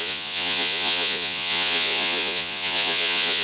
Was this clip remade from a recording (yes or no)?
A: yes